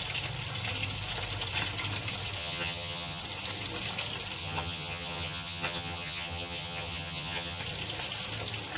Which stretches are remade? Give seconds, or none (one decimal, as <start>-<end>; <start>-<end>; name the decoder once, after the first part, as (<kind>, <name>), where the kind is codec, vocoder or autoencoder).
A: 2.4-3.2 (vocoder, HiFi-GAN); 4.4-7.6